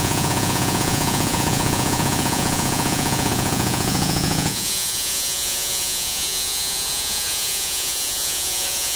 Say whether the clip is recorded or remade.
remade